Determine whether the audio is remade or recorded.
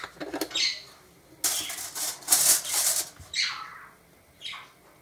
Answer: recorded